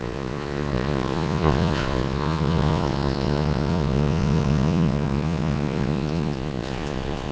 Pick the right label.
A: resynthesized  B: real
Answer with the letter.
A